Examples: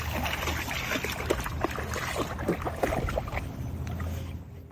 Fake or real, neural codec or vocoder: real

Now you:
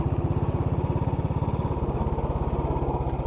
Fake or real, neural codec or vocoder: real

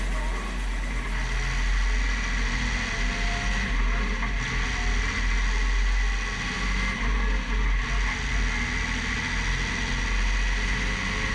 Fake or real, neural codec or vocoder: real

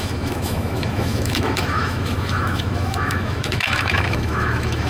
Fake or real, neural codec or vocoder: fake, autoencoder, DAC-VAE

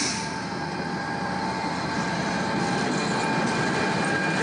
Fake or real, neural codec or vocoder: real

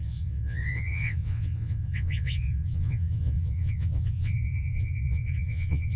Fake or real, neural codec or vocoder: fake, vocoder, WaveNeXt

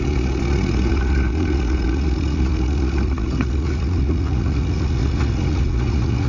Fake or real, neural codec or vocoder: fake, vocoder, Vocos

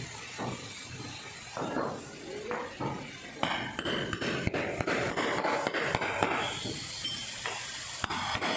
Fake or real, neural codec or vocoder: real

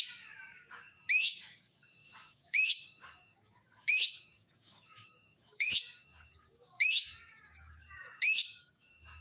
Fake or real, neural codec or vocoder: fake, codec, DAC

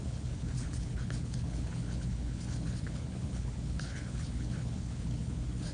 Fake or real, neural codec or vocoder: fake, codec, HILCodec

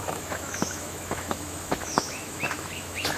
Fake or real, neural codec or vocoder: fake, autoencoder, DAC-VAE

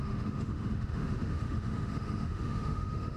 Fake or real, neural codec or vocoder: fake, autoencoder, DAC-VAE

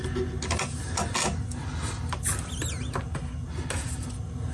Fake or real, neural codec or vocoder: real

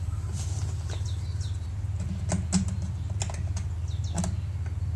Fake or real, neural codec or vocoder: real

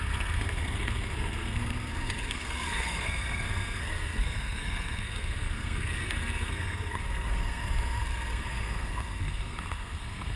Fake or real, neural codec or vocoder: fake, codec, SNAC